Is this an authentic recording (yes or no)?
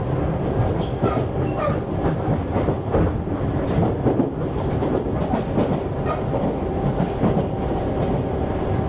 yes